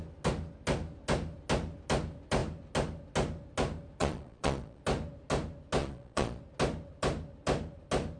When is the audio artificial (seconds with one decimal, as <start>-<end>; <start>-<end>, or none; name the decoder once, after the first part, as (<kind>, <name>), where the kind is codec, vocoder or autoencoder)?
4.0-4.8 (vocoder, Vocos); 5.8-6.4